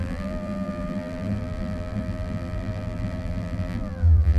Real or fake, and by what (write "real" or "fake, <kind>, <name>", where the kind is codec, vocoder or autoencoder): fake, vocoder, BigVGAN v2